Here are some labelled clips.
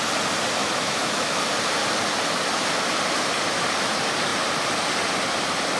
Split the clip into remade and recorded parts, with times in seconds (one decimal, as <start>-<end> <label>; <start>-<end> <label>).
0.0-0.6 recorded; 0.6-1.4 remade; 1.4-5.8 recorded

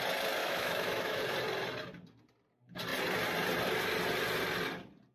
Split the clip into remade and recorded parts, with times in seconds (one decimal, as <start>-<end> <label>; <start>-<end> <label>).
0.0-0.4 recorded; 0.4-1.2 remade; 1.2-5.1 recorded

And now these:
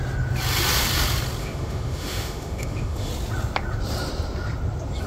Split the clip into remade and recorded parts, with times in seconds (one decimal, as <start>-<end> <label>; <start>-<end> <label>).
0.0-1.4 recorded; 1.4-3.1 remade; 3.1-5.1 recorded